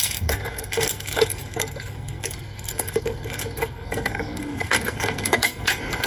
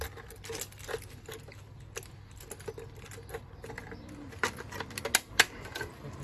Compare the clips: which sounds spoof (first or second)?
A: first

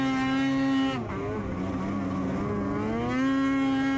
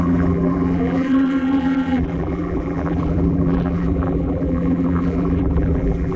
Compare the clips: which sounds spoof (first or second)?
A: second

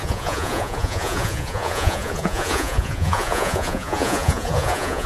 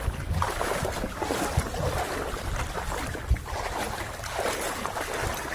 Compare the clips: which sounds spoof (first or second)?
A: first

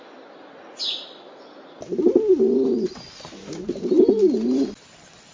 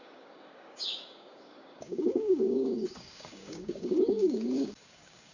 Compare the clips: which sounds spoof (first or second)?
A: second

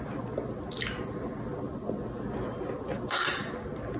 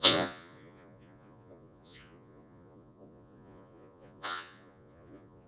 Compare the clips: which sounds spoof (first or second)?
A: second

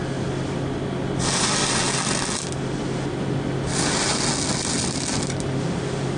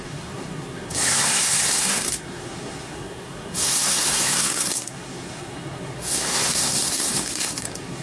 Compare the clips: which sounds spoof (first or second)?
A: second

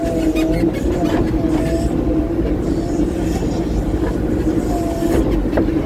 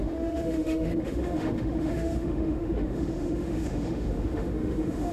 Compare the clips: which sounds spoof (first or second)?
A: second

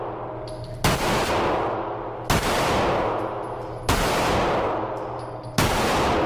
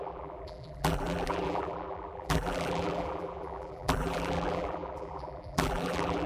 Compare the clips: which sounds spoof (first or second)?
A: second